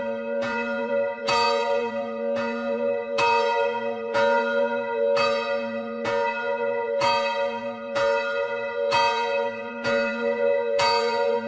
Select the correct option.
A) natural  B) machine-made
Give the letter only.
B